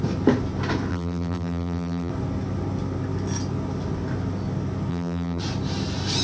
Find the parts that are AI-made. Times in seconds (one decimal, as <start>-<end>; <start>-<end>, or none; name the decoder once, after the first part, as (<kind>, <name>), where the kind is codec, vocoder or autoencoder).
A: 0.9-2.1 (vocoder, BigVGAN v2); 4.9-5.4